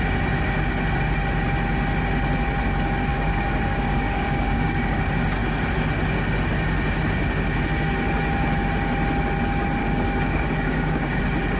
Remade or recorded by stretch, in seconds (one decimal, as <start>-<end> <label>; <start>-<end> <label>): 0.0-3.1 recorded; 3.1-5.0 remade; 5.0-9.8 recorded; 9.8-11.2 remade; 11.2-11.6 recorded